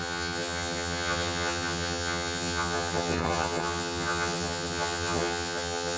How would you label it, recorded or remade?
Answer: remade